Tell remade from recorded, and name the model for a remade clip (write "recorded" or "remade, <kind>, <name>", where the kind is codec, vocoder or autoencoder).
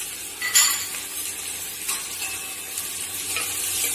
recorded